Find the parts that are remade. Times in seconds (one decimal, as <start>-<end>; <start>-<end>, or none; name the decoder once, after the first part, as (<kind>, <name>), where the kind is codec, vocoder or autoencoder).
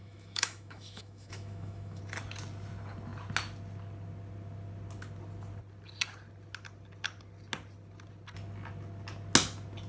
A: 0.0-2.0 (autoencoder, DAC-VAE)